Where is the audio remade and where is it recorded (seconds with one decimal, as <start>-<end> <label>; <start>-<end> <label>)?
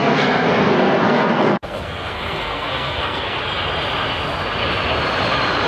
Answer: 0.0-3.4 remade; 3.4-5.7 recorded